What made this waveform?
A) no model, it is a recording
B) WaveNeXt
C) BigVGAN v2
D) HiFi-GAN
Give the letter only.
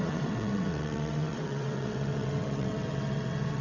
B